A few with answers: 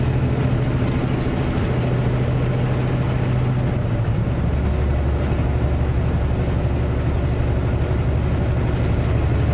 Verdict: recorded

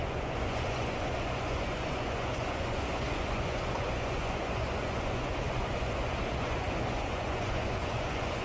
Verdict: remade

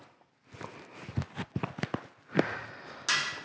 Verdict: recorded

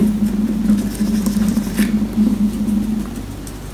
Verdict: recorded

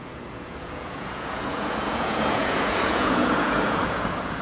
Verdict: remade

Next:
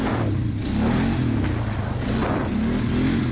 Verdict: recorded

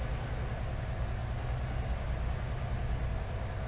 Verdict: recorded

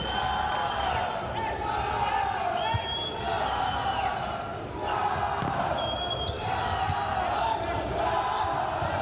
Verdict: recorded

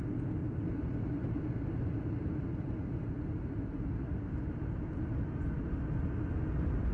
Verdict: recorded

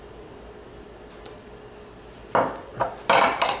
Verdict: recorded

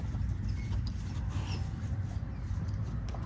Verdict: recorded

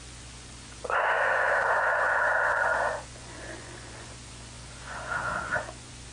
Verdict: remade